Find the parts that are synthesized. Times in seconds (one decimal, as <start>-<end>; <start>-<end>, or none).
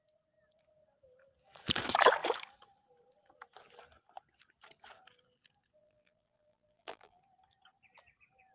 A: 5.8-7.2